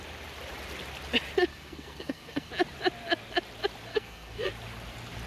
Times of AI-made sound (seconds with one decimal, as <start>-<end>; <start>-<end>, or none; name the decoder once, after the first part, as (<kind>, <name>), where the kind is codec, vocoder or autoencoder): 1.5-2.5 (codec, SNAC); 3.9-4.5